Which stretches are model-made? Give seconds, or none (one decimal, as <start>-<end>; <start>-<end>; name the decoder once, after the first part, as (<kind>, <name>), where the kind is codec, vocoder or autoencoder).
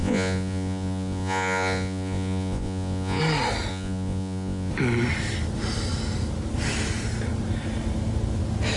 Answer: 0.0-3.2 (vocoder, Vocos); 3.7-4.7